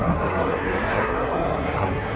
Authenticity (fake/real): fake